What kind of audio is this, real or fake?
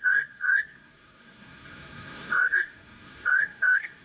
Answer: fake